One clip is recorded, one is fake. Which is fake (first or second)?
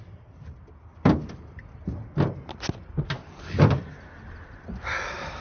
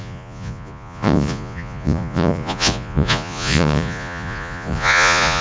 second